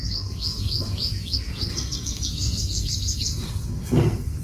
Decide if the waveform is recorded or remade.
remade